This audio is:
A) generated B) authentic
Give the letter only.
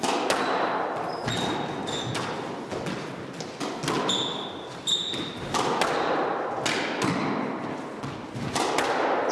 B